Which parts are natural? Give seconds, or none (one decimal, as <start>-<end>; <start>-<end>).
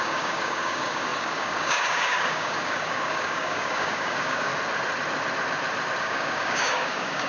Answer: 4.5-6.0